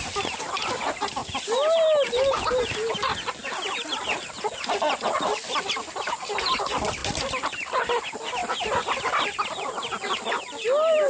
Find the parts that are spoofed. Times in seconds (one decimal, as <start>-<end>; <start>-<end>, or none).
none

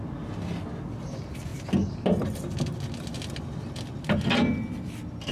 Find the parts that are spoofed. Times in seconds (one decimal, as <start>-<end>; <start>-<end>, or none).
none

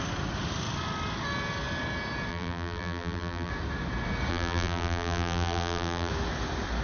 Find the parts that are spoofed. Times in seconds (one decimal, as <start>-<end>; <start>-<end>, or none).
2.3-3.5; 4.3-6.1

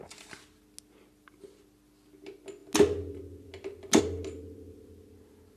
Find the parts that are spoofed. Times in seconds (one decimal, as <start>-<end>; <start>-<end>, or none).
none

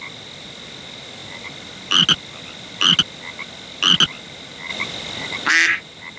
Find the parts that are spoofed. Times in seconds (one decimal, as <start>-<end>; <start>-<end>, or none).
4.7-5.5